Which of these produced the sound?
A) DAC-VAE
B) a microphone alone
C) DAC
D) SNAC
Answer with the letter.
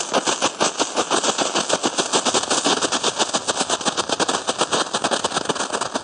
B